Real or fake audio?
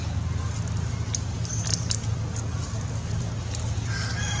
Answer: real